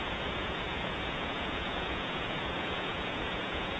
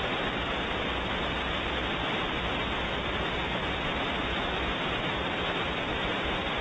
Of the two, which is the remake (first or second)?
first